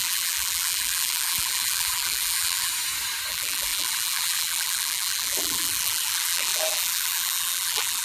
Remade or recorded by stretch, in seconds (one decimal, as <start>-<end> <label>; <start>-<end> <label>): 0.0-2.7 remade; 2.7-3.3 recorded; 3.3-8.0 remade